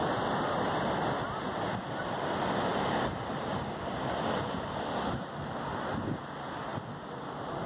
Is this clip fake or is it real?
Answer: real